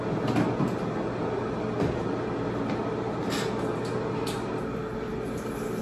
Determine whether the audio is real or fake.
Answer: real